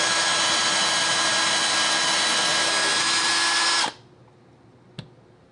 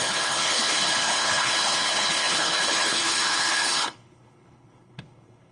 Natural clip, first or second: first